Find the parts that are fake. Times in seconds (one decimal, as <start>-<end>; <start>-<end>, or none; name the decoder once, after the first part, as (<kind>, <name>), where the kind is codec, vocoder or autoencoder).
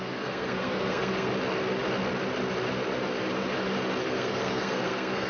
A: 0.0-1.3 (codec, SNAC); 4.0-5.3